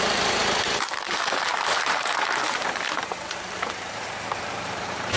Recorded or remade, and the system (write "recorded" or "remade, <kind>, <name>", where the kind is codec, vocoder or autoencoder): remade, vocoder, BigVGAN v2